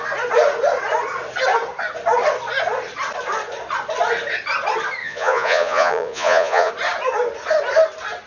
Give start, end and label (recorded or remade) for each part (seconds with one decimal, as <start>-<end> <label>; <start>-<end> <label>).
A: 0.0-5.0 recorded; 5.0-6.7 remade; 6.7-8.3 recorded